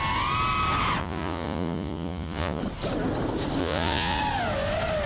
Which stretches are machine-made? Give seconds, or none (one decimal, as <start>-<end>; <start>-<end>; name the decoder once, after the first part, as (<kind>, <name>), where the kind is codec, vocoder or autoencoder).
1.0-2.6 (vocoder, Vocos); 3.6-4.2